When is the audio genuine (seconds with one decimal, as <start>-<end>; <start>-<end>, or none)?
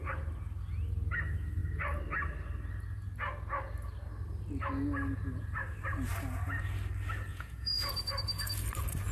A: 0.0-7.3; 7.9-9.1